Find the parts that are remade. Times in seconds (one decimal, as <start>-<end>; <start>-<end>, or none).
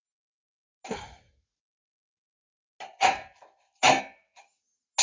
none